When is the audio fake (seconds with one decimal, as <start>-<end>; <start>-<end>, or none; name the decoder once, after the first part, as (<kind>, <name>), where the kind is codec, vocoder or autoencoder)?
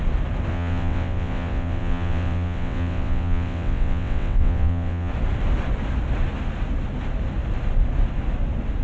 0.5-5.1 (vocoder, WaveNeXt)